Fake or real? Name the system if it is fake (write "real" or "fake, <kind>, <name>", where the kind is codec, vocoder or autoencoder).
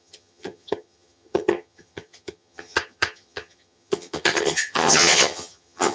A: fake, vocoder, HiFi-GAN